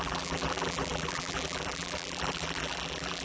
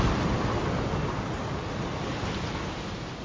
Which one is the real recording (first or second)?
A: second